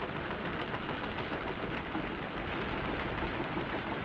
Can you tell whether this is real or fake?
real